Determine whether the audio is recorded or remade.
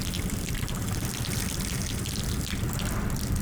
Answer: recorded